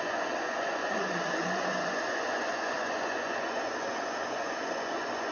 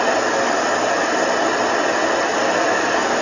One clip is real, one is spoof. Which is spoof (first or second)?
first